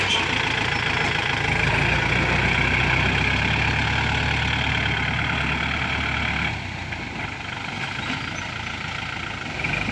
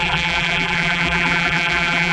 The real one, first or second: first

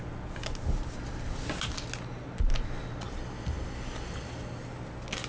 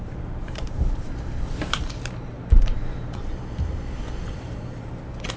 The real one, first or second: first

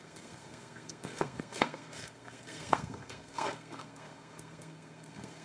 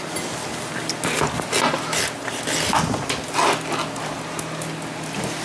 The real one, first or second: second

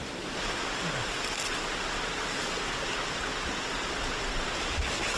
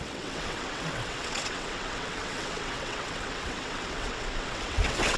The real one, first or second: first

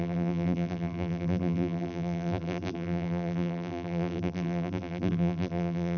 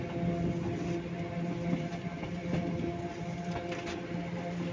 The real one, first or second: second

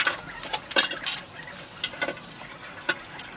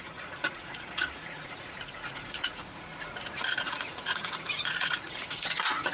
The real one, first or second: first